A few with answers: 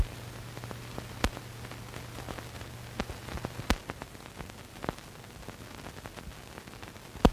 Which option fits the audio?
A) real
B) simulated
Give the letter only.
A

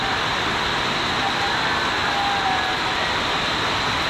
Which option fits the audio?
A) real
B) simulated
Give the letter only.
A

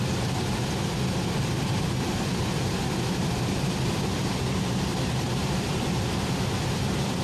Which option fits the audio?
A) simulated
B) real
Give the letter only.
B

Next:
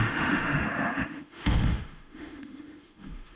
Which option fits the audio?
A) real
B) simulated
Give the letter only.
B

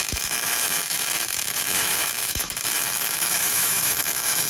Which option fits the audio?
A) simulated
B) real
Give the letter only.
A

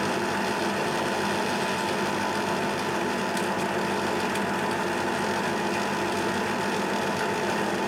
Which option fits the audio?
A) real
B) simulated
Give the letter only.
A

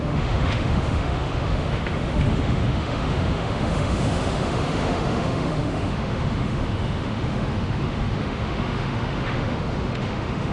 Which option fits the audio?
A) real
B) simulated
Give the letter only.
B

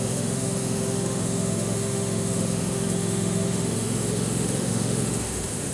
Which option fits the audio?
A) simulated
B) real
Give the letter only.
A